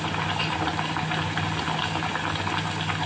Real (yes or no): yes